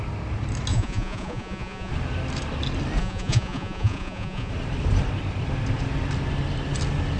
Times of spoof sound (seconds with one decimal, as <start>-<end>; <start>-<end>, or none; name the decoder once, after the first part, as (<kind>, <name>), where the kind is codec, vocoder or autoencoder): 0.7-1.9 (vocoder, Vocos); 3.0-4.5